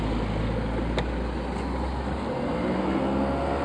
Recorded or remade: recorded